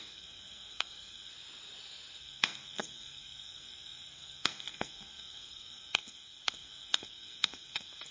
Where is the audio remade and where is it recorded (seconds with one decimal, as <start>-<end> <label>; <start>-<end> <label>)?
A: 0.0-1.3 remade; 1.3-2.2 recorded; 2.2-8.1 remade